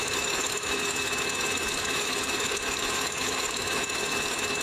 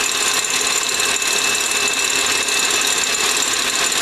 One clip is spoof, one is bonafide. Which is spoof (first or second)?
first